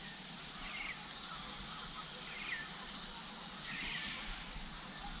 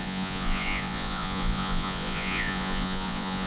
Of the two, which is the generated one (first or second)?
second